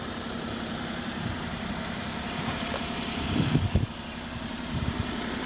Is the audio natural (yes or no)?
no